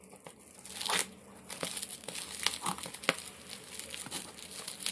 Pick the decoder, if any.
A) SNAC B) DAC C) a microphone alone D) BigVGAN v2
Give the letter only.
C